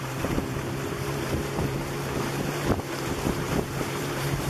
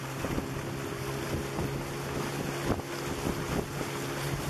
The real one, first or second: second